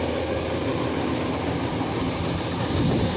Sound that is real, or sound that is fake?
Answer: real